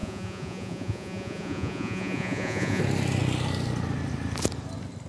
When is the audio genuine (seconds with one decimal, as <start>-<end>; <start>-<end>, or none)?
2.8-5.1